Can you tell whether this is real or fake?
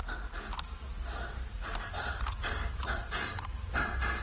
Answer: real